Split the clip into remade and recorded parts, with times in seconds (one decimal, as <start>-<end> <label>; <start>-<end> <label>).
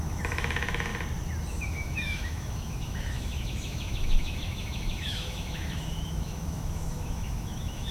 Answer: 0.0-0.9 remade; 0.9-1.5 recorded; 1.5-7.9 remade